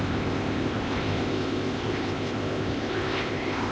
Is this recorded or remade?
remade